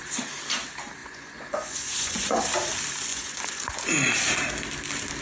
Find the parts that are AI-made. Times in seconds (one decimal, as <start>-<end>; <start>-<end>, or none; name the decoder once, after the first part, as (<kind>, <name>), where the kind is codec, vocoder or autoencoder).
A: 1.0-2.4 (vocoder, Vocos); 3.1-3.8